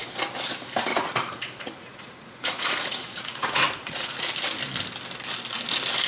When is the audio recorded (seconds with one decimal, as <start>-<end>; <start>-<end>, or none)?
0.0-0.9; 4.3-6.1